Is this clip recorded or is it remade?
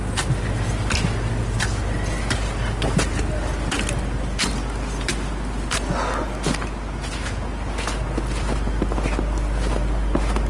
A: recorded